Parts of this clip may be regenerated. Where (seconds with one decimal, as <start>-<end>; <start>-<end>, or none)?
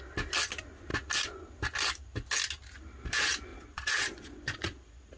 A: 3.5-5.2